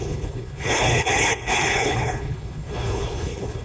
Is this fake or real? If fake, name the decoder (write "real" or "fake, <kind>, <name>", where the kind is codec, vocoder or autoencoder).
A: fake, codec, HILCodec